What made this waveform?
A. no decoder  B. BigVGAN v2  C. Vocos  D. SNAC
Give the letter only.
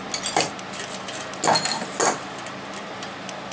A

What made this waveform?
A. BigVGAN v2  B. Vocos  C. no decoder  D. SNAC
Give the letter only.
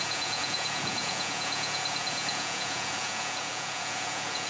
B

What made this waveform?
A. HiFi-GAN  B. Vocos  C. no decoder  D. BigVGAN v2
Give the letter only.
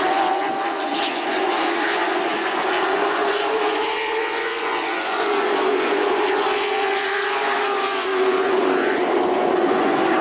B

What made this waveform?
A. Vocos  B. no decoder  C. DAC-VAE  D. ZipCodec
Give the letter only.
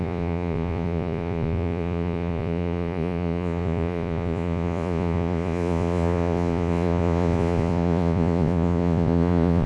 A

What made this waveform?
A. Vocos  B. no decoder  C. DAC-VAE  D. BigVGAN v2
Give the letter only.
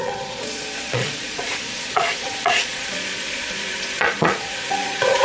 A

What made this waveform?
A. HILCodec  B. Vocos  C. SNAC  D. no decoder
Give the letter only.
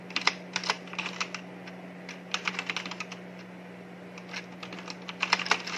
D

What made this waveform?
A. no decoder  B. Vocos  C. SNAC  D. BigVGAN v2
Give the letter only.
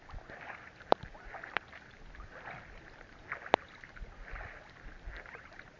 A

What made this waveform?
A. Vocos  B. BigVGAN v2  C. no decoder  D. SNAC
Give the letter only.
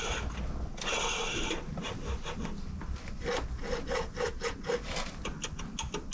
C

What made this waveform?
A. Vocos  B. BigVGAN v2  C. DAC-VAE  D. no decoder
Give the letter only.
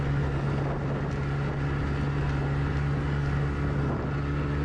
D